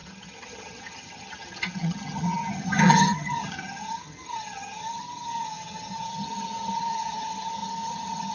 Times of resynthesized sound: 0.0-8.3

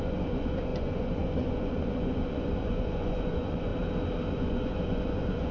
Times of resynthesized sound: 0.0-3.7; 4.3-5.5

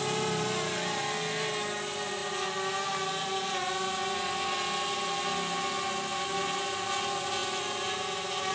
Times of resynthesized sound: none

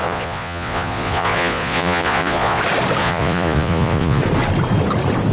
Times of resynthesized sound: 0.0-2.6; 3.0-4.2

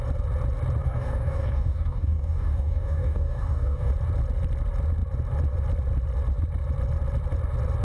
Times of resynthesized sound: 0.8-3.9

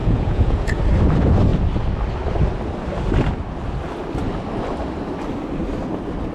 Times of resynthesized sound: 0.0-0.8